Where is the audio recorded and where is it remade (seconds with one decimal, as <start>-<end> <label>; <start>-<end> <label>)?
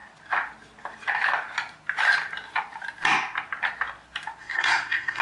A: 0.0-4.4 recorded; 4.4-5.2 remade